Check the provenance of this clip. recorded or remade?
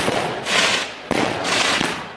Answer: remade